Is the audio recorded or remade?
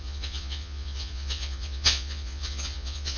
remade